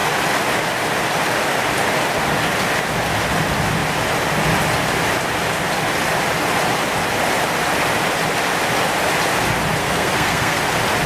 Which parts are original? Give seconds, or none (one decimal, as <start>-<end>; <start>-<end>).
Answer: 0.0-9.8; 10.6-11.1